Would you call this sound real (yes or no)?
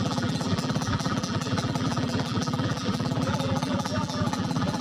no